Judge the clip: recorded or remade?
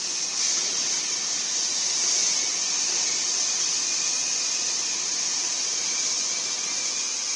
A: recorded